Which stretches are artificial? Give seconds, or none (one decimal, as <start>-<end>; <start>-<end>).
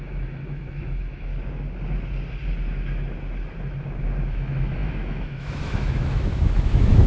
0.0-1.3; 4.3-7.1